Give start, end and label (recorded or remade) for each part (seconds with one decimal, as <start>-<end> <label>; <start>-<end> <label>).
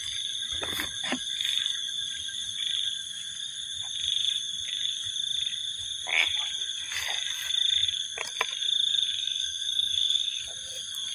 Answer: 0.0-9.2 recorded; 9.2-10.4 remade; 10.4-11.1 recorded